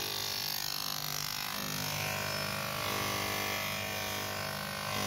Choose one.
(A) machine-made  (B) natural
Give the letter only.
B